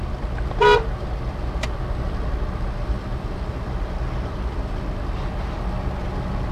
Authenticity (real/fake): real